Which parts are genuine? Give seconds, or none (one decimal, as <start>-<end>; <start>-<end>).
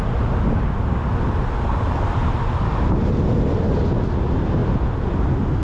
0.0-5.6